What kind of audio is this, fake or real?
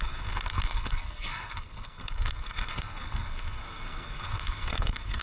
fake